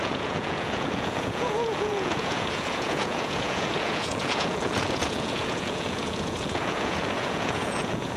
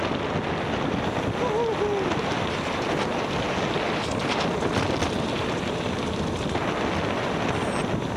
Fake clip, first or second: first